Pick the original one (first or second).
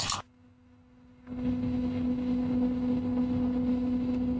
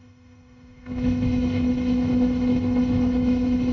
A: first